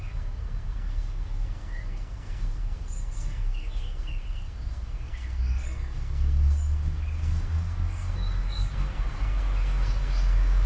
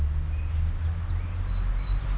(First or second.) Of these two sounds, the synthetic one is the first